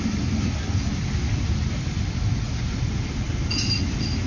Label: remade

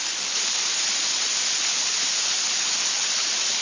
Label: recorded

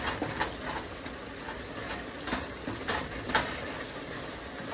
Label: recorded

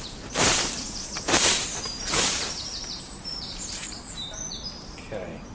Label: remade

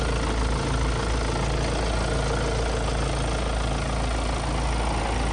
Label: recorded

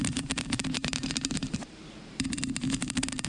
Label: remade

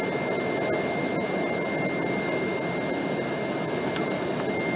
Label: recorded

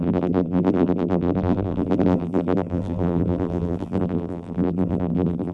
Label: remade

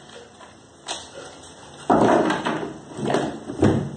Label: recorded